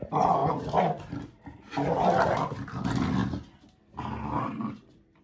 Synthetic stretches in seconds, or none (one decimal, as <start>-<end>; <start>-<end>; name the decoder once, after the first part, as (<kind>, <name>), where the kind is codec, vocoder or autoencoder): none